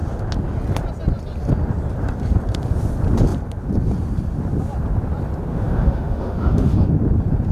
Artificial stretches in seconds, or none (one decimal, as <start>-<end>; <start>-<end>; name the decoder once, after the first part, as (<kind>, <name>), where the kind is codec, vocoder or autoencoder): 5.5-6.9 (autoencoder, DAC-VAE)